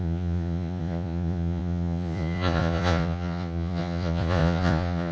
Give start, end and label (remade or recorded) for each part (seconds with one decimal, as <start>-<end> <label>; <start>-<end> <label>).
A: 0.0-5.1 remade